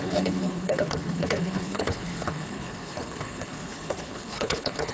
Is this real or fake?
fake